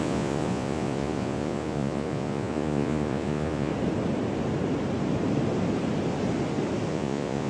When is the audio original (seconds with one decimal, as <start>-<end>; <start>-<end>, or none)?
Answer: 3.7-6.9